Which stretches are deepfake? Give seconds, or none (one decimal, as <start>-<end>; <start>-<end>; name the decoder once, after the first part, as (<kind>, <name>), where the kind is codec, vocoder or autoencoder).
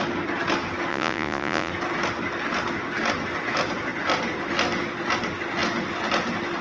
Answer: 0.9-1.7 (vocoder, Vocos)